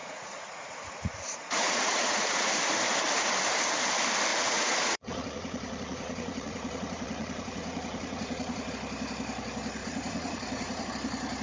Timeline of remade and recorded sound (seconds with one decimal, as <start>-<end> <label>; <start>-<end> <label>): 0.0-2.5 remade; 2.5-4.3 recorded; 4.3-8.7 remade; 8.7-9.8 recorded; 9.8-10.9 remade; 10.9-11.4 recorded